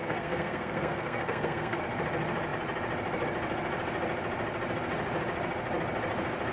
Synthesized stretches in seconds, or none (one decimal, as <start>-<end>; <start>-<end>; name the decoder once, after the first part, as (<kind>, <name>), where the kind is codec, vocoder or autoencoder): 0.0-1.8 (codec, SNAC)